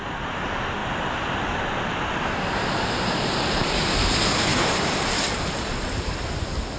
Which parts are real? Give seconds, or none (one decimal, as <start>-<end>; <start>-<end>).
0.8-3.0